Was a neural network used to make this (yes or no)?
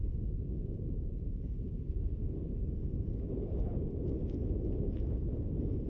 no